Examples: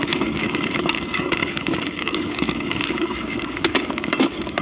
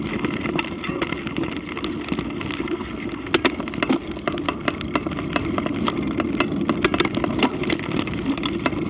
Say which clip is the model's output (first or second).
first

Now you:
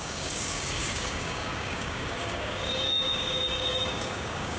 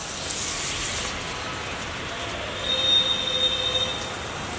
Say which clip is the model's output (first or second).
first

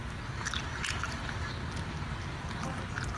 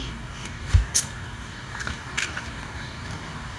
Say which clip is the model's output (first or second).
second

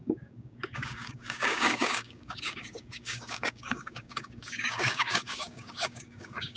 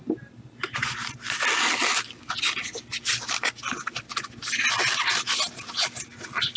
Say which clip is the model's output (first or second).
first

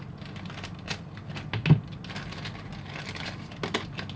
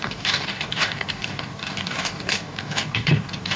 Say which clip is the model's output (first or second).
second